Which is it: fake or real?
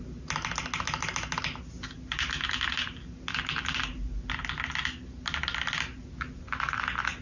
real